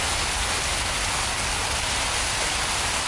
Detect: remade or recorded recorded